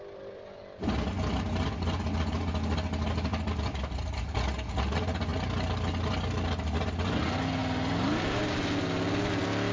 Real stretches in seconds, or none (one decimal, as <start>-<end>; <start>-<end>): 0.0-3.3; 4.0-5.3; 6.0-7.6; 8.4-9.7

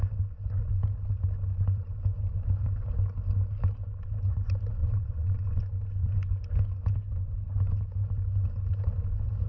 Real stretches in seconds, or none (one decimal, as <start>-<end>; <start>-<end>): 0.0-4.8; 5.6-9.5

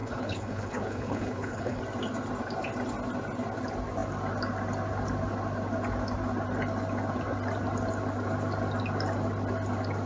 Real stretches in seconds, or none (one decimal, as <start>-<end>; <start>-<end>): 1.8-10.1

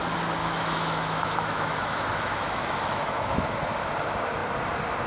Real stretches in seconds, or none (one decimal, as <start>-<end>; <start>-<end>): 0.0-0.4; 3.5-5.1

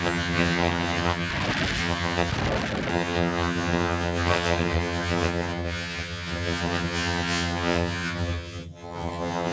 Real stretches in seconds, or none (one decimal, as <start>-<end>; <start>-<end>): 1.3-1.8; 2.3-2.9

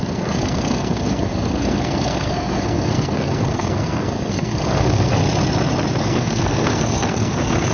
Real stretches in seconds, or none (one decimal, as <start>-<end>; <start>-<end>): 5.2-6.0

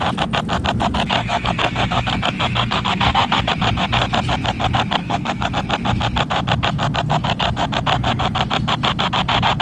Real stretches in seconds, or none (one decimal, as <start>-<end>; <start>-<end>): 0.0-1.2; 3.5-5.0; 5.5-9.6

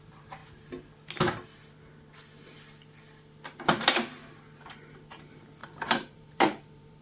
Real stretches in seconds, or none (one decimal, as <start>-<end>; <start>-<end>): 0.0-5.6